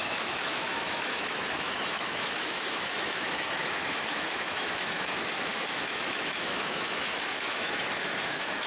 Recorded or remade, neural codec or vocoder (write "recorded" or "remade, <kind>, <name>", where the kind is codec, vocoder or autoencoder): remade, autoencoder, DAC-VAE